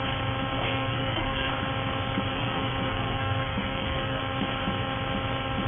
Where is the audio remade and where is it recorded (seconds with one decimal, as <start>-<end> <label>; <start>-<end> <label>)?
0.0-0.7 recorded; 0.7-1.5 remade; 1.5-2.3 recorded; 2.3-4.2 remade; 4.2-5.7 recorded